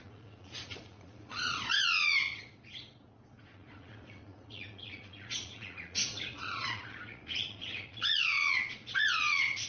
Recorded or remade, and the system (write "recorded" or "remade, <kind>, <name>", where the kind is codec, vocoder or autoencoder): remade, vocoder, Vocos